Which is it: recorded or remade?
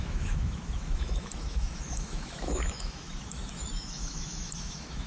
remade